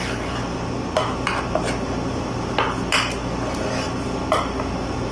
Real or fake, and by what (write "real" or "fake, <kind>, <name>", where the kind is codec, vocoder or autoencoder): real